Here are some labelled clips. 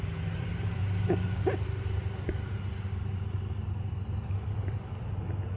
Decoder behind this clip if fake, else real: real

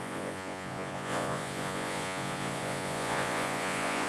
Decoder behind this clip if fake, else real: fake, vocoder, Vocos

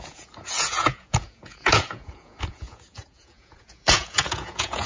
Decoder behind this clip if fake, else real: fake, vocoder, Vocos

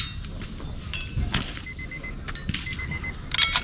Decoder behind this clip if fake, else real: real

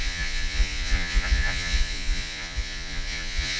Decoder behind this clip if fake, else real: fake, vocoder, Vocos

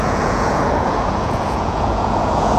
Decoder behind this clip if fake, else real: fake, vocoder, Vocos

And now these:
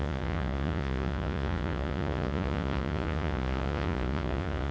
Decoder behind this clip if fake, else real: fake, vocoder, Vocos